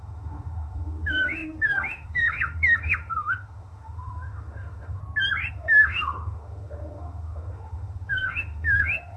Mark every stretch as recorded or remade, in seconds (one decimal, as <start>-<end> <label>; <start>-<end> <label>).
0.0-5.0 remade; 5.0-5.5 recorded; 5.5-9.2 remade

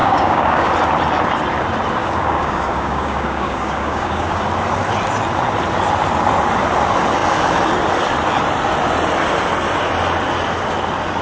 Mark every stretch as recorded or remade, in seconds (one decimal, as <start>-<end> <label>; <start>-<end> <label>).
0.0-0.7 remade; 0.7-2.0 recorded; 2.0-4.4 remade; 4.4-11.2 recorded

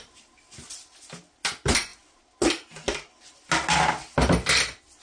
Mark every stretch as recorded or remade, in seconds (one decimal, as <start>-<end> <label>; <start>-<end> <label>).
0.0-5.0 recorded

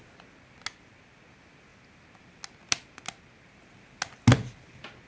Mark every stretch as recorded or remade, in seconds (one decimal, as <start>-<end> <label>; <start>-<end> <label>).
0.0-5.1 recorded

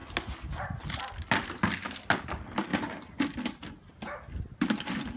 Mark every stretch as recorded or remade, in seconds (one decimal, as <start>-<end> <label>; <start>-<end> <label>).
0.0-5.2 recorded

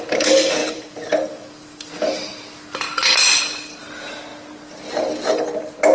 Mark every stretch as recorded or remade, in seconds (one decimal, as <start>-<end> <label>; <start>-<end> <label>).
0.0-0.6 recorded; 0.6-3.4 remade; 3.4-4.3 recorded; 4.3-5.4 remade; 5.4-5.9 recorded